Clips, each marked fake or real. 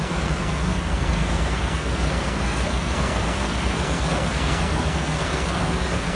fake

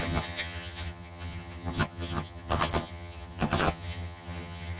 fake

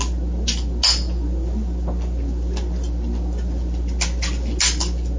real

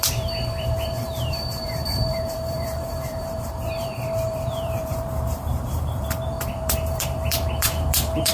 fake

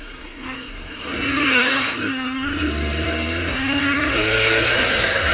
fake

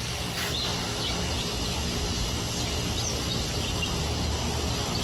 real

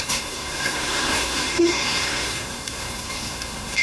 fake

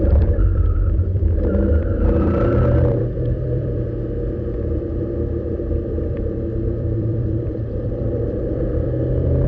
fake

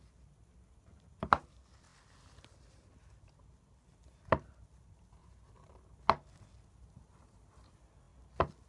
real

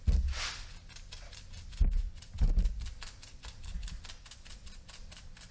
real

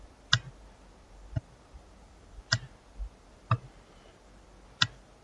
real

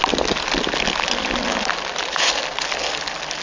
real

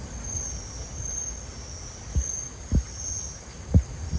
real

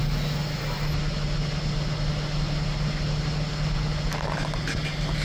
real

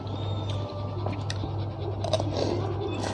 real